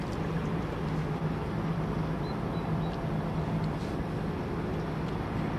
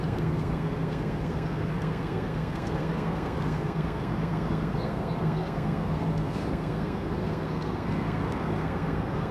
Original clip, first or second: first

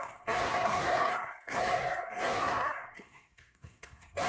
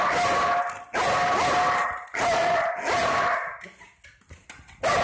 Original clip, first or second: second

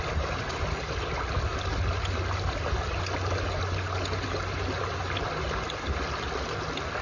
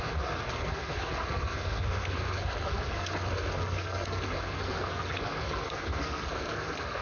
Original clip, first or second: first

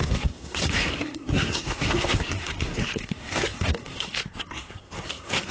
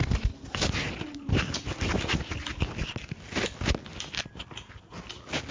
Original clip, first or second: second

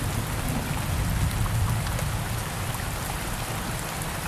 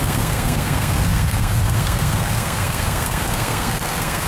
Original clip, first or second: first